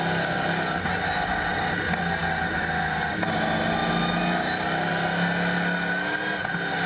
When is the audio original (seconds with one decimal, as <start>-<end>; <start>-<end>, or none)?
0.0-6.9